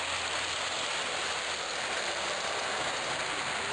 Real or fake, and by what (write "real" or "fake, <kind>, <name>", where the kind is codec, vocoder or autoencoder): real